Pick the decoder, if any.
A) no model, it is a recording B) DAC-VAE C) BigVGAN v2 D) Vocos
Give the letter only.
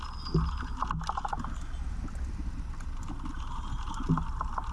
A